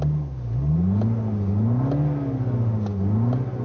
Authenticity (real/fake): real